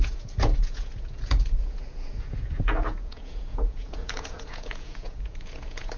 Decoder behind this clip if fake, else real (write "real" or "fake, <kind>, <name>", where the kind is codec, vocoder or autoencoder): fake, vocoder, Vocos